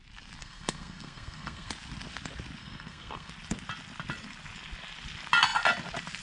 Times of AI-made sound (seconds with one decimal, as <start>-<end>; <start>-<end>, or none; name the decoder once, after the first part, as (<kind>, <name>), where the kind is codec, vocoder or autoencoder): 0.4-1.7 (codec, SNAC); 2.6-3.3